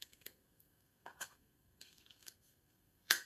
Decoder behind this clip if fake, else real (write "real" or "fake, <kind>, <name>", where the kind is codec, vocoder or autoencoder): fake, codec, SNAC